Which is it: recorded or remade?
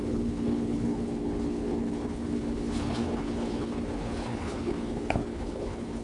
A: remade